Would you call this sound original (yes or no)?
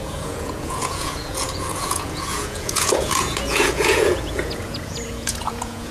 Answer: no